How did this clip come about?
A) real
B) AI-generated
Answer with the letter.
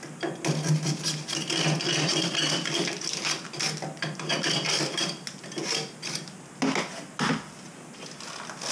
A